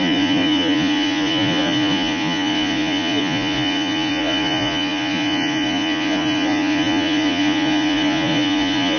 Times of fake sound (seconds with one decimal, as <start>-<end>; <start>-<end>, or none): 0.0-9.0